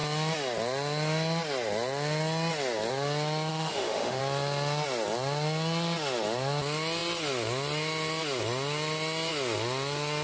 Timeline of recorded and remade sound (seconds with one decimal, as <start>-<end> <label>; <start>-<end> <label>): 0.0-3.5 recorded; 3.5-4.2 remade; 4.2-10.2 recorded